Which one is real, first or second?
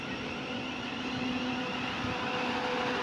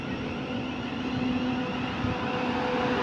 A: second